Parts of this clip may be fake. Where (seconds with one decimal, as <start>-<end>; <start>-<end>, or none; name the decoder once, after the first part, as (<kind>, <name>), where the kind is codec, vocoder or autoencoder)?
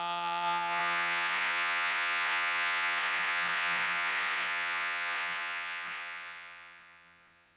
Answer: 0.0-7.6 (vocoder, Vocos)